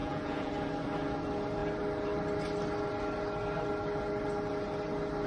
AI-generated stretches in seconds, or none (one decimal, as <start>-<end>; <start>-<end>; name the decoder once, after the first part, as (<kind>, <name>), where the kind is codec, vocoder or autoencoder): 0.0-0.5 (vocoder, Vocos)